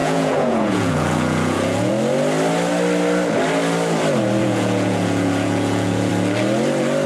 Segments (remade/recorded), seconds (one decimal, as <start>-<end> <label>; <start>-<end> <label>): 0.0-1.9 remade; 1.9-4.4 recorded; 4.4-6.1 remade; 6.1-7.1 recorded